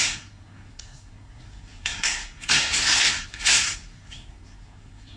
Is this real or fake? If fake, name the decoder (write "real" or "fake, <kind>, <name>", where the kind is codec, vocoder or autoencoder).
fake, codec, SNAC